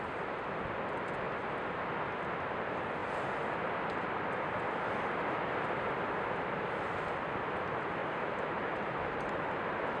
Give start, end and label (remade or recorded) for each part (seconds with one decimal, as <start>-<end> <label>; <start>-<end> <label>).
0.0-8.0 recorded; 8.0-9.6 remade; 9.6-10.0 recorded